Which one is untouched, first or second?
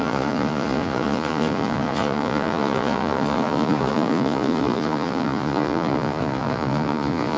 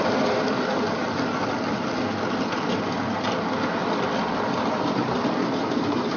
second